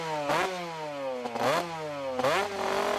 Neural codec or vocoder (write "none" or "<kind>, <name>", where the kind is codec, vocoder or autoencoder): none